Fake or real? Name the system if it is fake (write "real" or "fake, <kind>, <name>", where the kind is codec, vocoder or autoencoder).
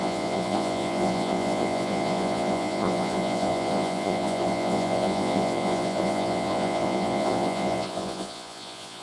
fake, vocoder, Vocos